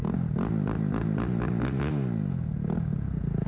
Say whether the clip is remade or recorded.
recorded